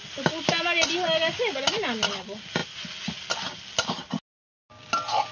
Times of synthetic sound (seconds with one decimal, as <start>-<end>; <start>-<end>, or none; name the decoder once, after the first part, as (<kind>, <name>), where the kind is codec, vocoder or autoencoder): none